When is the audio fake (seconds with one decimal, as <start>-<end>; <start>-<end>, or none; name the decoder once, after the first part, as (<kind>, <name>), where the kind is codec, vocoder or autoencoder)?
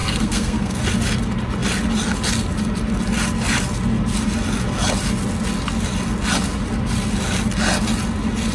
0.0-0.8 (codec, SNAC)